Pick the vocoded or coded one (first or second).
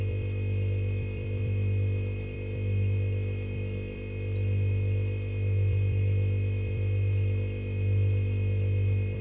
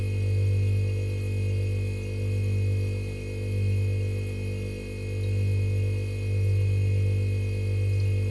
first